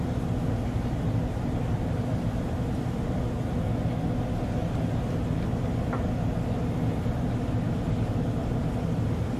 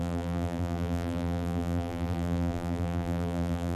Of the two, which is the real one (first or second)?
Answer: first